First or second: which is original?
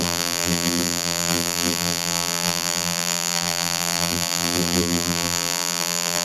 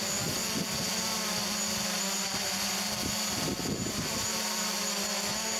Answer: second